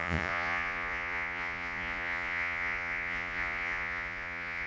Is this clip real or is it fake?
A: fake